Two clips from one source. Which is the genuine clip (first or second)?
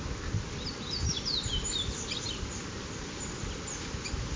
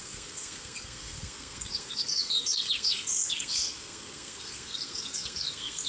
first